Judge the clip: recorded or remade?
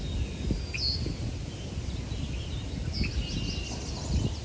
recorded